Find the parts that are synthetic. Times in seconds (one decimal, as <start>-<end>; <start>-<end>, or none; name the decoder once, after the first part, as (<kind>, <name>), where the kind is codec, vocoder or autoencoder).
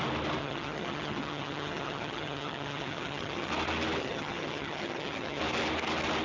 0.4-3.5 (vocoder, HiFi-GAN); 4.0-5.4